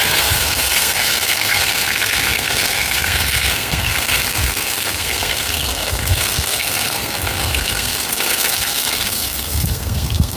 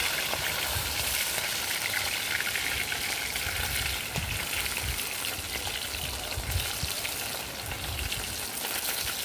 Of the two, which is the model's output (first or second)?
first